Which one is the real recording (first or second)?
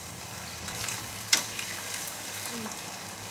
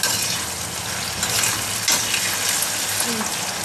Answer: second